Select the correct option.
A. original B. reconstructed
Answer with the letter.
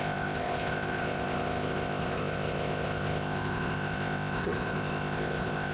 B